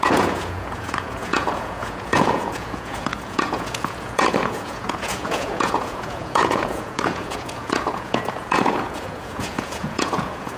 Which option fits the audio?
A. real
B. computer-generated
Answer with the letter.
B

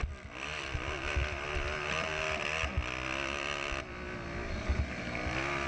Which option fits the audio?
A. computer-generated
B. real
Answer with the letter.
B